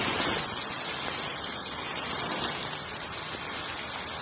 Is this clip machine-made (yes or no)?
no